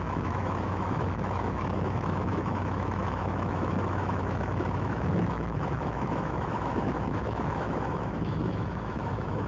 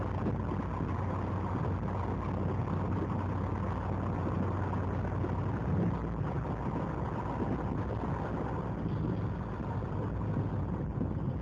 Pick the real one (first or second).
second